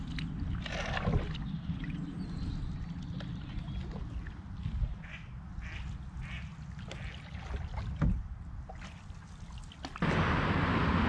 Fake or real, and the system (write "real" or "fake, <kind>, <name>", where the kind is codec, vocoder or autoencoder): real